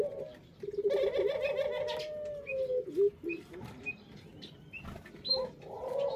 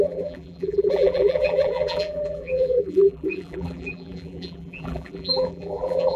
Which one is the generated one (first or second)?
second